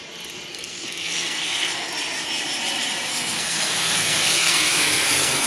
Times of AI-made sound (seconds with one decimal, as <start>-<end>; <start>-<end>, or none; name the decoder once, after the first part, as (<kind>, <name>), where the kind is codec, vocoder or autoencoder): 0.5-1.9 (codec, SNAC); 3.1-5.5